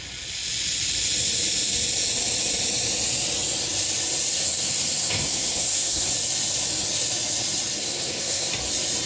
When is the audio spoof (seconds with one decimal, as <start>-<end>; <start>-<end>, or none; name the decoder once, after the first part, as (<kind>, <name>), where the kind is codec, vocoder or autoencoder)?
4.3-6.1 (codec, SNAC); 7.8-8.5